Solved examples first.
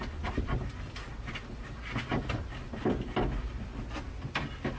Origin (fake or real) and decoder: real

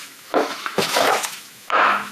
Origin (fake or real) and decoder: fake, autoencoder, DAC-VAE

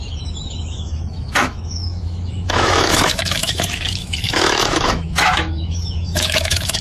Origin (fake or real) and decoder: fake, autoencoder, DAC-VAE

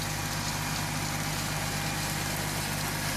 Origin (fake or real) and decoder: real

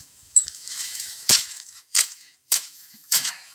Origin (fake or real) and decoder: fake, autoencoder, DAC-VAE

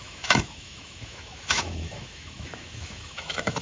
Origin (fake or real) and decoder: fake, autoencoder, DAC-VAE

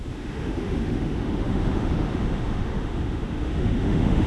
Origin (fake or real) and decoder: fake, autoencoder, DAC-VAE